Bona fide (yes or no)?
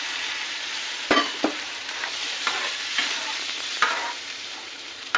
no